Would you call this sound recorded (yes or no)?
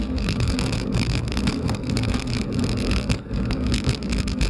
no